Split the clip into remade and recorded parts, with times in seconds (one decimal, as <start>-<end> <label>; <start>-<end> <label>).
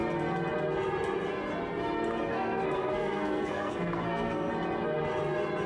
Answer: 0.0-2.3 recorded; 2.3-4.5 remade; 4.5-5.7 recorded